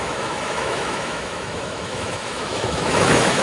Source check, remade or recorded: remade